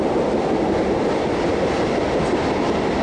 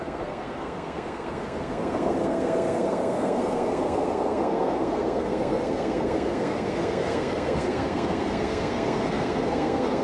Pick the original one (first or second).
first